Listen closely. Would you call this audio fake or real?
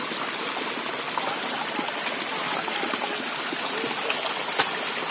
real